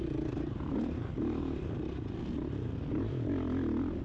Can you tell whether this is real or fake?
real